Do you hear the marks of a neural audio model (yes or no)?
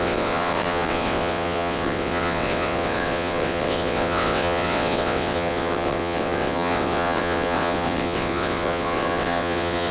yes